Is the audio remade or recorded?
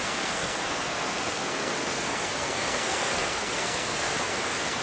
remade